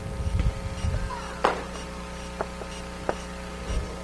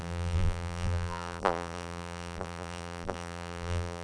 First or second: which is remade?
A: second